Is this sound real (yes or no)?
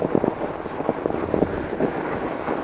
yes